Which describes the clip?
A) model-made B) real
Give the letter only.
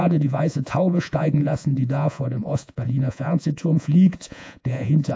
A